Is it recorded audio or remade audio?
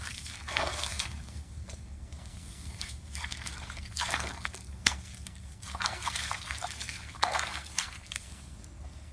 remade